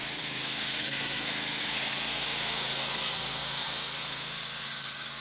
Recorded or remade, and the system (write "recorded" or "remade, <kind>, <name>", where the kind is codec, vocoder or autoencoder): remade, codec, SNAC